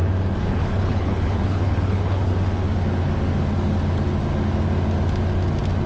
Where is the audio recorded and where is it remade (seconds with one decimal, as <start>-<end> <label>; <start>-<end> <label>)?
0.0-0.5 recorded; 0.5-2.3 remade; 2.3-5.9 recorded